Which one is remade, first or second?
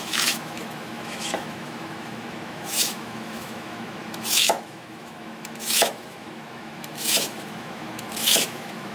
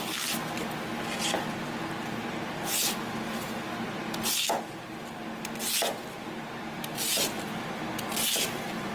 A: first